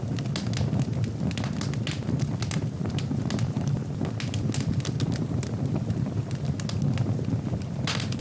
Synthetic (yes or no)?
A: no